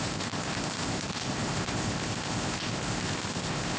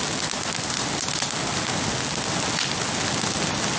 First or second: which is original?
second